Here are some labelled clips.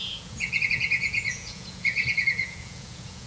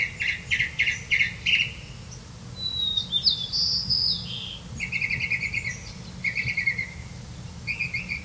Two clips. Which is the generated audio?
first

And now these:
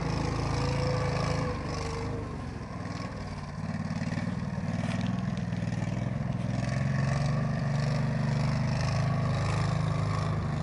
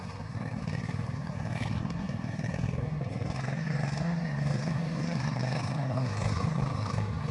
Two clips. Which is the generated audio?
second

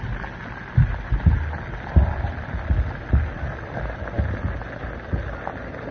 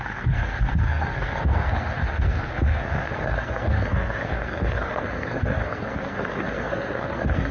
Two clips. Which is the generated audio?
second